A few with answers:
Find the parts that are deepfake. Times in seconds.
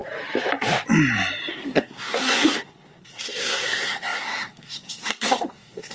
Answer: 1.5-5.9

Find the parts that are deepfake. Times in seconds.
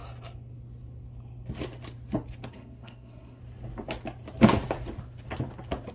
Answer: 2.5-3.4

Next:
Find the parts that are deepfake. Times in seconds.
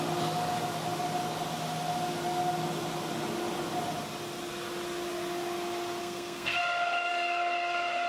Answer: 6.0-6.6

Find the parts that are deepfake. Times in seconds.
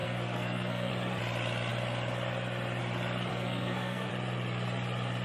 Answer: 0.0-0.9; 3.3-4.1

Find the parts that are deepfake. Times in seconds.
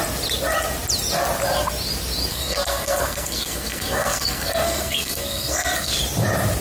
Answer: 2.3-6.0